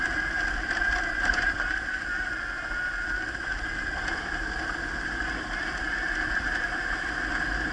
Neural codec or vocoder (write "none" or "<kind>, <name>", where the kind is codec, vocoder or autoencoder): none